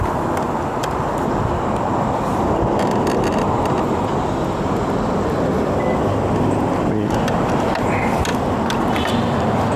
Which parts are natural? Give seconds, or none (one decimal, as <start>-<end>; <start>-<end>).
0.0-9.8